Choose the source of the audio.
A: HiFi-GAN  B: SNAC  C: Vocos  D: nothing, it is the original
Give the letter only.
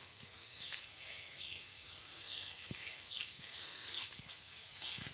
B